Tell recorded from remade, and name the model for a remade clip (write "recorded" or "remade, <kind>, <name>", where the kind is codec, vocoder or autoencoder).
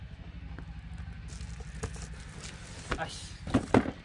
recorded